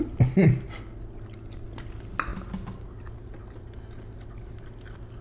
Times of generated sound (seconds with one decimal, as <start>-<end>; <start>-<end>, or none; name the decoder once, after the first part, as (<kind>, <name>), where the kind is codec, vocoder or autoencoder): none